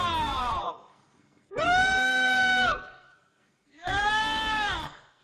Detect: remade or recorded remade